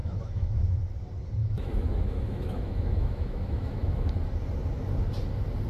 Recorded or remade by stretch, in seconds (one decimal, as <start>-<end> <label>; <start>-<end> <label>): 0.0-0.8 remade; 0.8-1.4 recorded; 1.4-4.1 remade; 4.1-5.7 recorded